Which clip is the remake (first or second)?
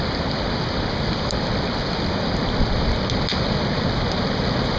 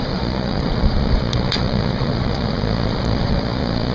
second